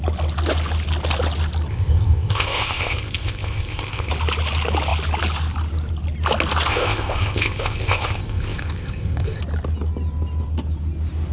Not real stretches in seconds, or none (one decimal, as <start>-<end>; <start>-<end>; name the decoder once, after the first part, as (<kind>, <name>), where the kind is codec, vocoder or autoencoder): 1.7-4.1 (codec, ZipCodec); 6.7-9.4